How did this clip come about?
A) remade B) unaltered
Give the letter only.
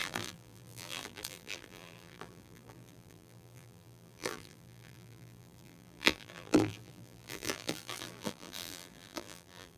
A